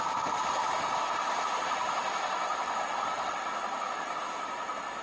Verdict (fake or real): real